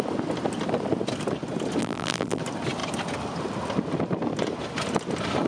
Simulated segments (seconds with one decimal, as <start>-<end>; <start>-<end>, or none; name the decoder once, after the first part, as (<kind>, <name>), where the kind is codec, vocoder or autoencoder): 1.8-2.4 (vocoder, BigVGAN v2)